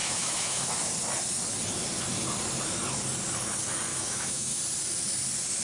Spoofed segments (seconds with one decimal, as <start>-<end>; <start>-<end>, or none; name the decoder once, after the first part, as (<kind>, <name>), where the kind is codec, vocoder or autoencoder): 0.0-0.9 (autoencoder, DAC-VAE); 3.9-4.6

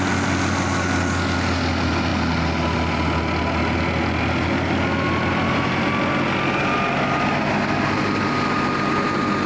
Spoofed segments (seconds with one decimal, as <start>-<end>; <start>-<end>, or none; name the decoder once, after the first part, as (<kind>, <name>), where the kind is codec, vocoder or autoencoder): none

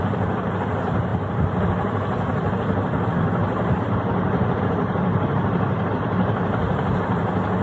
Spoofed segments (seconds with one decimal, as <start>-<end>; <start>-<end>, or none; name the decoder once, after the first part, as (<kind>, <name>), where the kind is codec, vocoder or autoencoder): none

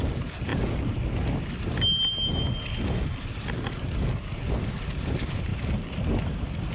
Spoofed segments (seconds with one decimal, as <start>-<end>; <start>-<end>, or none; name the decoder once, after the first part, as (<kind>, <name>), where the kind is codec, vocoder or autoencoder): none

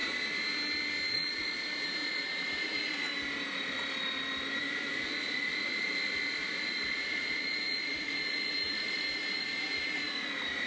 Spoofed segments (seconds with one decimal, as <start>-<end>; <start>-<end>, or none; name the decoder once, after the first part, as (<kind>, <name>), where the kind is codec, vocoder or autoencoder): 1.1-3.1 (vocoder, Vocos); 4.6-10.7

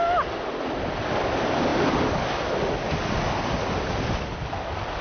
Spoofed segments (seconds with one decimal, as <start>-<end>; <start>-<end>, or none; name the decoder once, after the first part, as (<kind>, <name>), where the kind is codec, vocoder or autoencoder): none

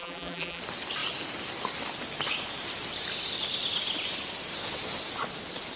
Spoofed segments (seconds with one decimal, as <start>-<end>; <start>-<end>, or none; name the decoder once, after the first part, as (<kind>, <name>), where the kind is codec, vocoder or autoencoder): 0.0-0.6 (vocoder, BigVGAN v2)

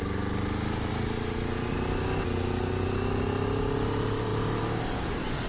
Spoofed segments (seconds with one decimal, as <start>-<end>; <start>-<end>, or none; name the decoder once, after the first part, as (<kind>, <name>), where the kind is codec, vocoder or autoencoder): none